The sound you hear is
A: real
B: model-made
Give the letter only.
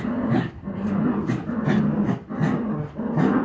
A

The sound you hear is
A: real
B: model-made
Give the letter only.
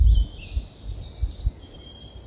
A